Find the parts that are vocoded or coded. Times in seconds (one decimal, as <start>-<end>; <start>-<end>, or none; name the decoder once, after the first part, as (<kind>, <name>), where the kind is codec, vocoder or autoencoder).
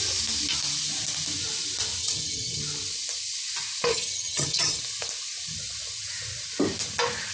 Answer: 2.0-2.6 (vocoder, HiFi-GAN); 3.9-4.8